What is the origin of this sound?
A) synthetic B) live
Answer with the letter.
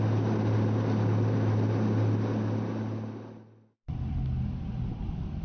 B